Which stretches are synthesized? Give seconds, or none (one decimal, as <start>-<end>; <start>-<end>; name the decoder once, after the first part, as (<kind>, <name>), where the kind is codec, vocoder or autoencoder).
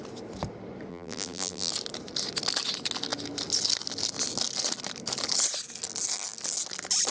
0.9-1.7 (vocoder, BigVGAN v2)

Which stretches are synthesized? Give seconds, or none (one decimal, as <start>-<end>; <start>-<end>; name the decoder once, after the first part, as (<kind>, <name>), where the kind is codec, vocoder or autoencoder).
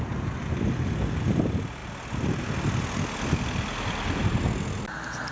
none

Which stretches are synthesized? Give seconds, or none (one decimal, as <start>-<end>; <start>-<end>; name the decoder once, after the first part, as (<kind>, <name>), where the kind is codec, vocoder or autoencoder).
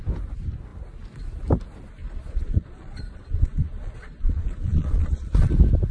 2.0-5.5 (vocoder, Vocos)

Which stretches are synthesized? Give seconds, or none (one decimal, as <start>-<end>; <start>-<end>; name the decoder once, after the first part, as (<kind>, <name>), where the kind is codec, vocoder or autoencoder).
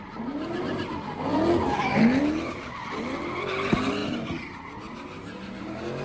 none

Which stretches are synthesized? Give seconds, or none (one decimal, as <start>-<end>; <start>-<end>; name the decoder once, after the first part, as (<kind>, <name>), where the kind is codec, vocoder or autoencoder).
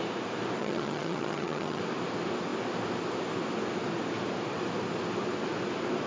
0.6-1.8 (vocoder, HiFi-GAN)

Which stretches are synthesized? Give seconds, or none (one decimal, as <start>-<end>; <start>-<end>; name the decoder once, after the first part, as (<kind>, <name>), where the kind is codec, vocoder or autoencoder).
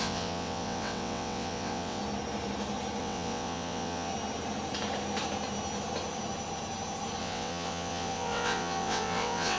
0.0-2.0 (vocoder, WaveNeXt); 3.0-4.1; 7.2-9.6